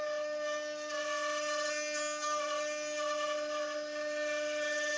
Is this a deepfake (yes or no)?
no